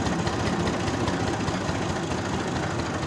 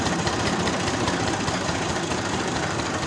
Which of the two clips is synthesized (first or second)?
second